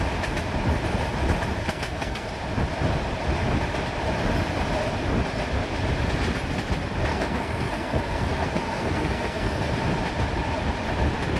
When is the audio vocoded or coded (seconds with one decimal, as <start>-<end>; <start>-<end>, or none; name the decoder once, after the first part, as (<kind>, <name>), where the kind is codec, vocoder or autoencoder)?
1.6-2.3 (codec, SNAC); 7.1-9.7